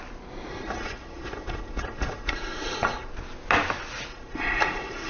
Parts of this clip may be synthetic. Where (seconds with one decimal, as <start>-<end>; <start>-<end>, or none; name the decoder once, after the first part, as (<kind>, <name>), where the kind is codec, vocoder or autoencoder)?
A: 0.5-3.1 (vocoder, Vocos); 4.1-5.1